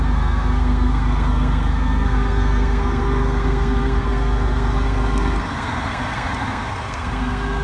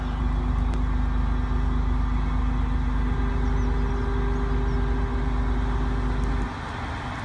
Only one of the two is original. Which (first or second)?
second